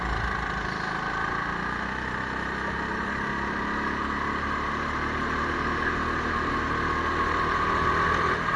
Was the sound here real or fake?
real